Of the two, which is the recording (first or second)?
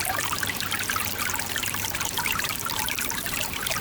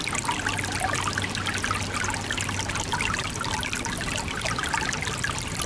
second